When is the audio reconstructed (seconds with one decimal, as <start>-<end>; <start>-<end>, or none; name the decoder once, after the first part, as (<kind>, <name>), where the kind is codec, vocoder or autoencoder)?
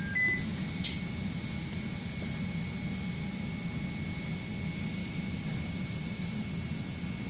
5.0-6.4 (vocoder, BigVGAN v2)